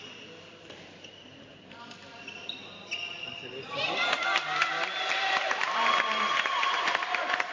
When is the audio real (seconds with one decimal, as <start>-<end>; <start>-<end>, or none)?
2.6-5.1